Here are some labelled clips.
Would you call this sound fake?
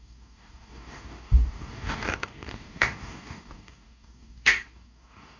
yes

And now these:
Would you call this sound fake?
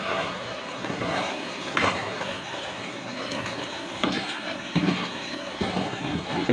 yes